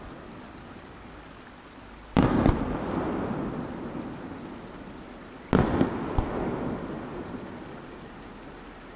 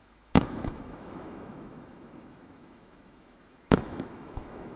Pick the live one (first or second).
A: first